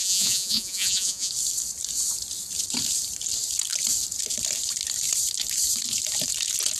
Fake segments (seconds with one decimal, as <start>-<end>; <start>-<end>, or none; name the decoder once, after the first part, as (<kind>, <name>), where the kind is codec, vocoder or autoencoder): 0.0-1.3 (vocoder, Vocos)